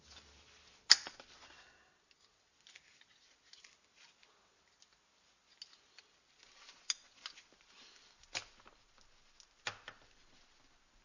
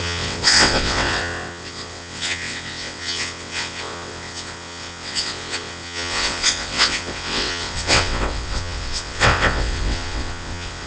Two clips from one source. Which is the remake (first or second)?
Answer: second